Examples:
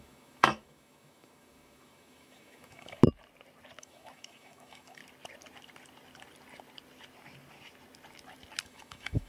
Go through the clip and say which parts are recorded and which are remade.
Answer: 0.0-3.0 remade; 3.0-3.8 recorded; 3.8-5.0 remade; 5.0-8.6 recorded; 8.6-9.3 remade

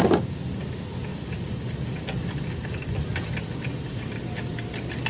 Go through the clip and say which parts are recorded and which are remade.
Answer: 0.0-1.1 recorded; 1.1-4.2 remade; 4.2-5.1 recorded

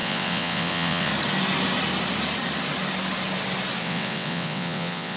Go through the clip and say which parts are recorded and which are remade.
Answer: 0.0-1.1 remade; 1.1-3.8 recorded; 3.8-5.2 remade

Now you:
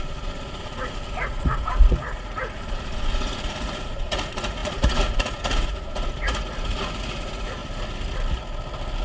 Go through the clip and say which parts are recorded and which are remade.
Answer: 0.0-7.6 remade; 7.6-9.0 recorded

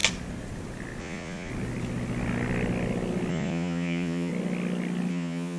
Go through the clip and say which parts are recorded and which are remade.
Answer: 0.0-1.0 recorded; 1.0-1.5 remade; 1.5-3.3 recorded; 3.3-4.3 remade; 4.3-5.1 recorded; 5.1-5.6 remade

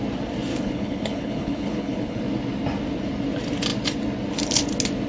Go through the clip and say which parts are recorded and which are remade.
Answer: 0.0-0.5 recorded; 0.5-2.2 remade; 2.2-5.1 recorded